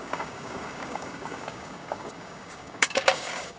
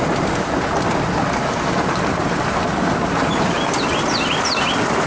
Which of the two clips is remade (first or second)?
first